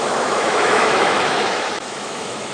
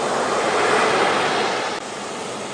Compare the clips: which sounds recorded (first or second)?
second